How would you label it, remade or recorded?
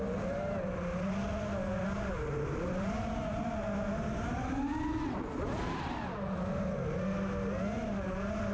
recorded